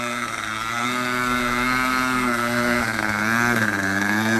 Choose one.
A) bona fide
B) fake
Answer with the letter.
B